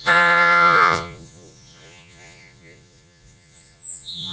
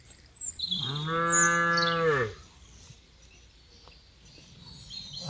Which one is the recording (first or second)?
second